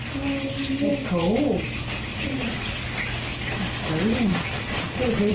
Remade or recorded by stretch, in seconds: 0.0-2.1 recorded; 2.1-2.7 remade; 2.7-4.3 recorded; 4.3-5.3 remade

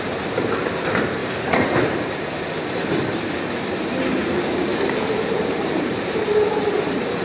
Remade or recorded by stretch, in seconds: 0.0-1.2 recorded; 1.2-2.4 remade; 2.4-4.7 recorded; 4.7-7.2 remade

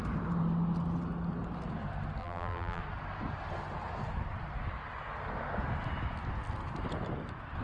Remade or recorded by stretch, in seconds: 0.0-2.2 recorded; 2.2-2.8 remade; 2.8-7.6 recorded